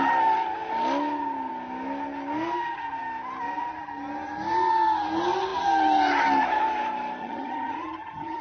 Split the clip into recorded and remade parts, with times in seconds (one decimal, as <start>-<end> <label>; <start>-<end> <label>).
0.0-7.2 recorded; 7.2-8.4 remade